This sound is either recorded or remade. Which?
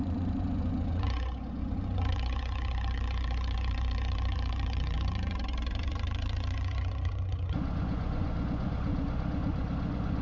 remade